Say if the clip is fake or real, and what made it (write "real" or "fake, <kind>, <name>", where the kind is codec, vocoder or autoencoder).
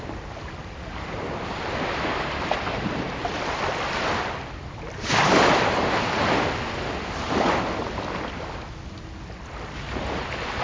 real